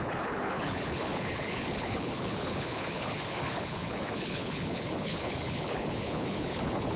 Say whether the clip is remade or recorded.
remade